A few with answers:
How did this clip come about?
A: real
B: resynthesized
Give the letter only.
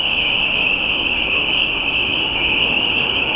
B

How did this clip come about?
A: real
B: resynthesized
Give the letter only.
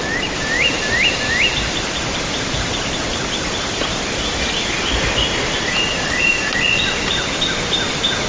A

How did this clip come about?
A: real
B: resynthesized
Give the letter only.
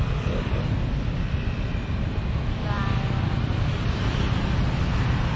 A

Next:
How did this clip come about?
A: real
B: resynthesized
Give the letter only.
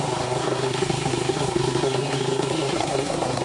B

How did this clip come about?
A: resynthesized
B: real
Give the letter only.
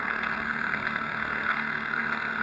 A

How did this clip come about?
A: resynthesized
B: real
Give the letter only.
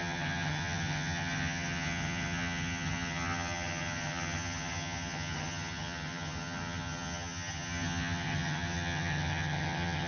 A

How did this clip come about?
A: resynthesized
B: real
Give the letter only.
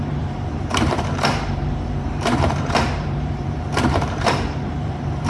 A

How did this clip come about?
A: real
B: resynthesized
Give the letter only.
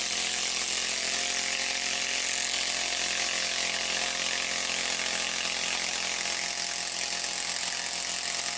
A